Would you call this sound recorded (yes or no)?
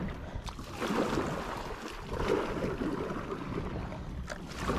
yes